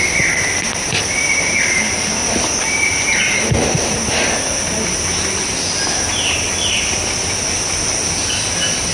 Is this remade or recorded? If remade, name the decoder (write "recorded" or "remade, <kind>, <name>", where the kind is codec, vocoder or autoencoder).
recorded